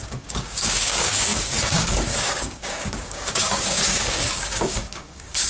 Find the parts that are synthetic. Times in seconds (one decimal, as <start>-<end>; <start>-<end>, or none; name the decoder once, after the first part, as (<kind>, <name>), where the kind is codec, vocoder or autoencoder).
0.0-5.5 (codec, DAC)

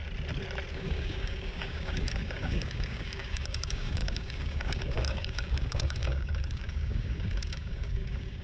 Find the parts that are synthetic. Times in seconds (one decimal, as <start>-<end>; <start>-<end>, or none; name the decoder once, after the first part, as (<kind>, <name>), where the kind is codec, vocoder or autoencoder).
0.7-8.4 (codec, DAC)